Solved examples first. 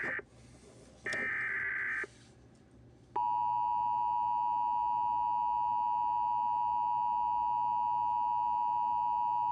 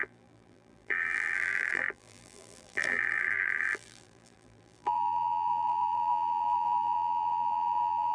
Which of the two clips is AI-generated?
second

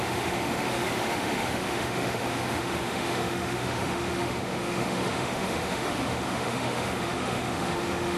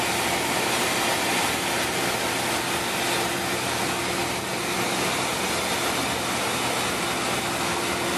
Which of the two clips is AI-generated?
first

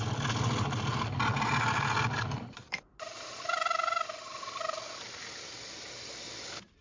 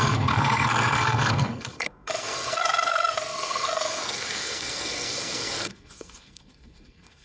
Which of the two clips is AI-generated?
second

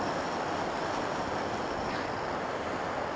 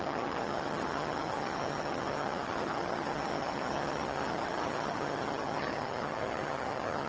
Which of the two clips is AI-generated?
second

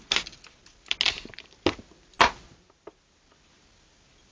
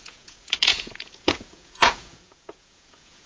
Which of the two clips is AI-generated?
second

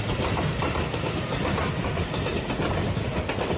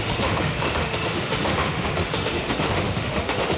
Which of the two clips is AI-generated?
second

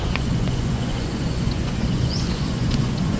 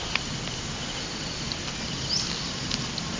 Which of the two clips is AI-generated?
first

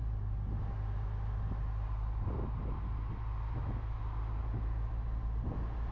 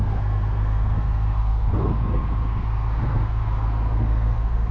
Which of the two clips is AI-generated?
second